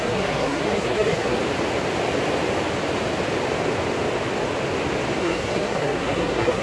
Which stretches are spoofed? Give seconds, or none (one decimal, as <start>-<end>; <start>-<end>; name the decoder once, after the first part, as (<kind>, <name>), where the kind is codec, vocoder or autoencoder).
0.0-1.4 (codec, SNAC); 5.2-6.6